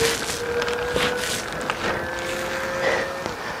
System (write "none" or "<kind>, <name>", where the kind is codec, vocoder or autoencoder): none